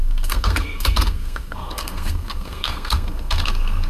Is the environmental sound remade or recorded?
remade